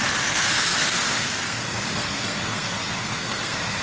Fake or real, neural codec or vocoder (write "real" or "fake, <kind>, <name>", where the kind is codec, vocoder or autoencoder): fake, codec, SNAC